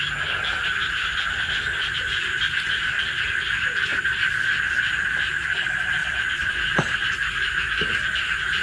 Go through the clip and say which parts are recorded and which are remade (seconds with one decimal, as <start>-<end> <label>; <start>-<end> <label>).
0.0-0.8 recorded; 0.8-2.4 remade; 2.4-3.9 recorded; 3.9-4.6 remade; 4.6-6.0 recorded; 6.0-7.7 remade; 7.7-8.6 recorded